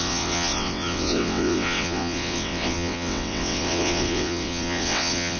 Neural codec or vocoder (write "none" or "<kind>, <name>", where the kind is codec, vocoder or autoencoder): vocoder, WaveNeXt